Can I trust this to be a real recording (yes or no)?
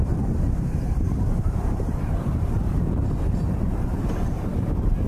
no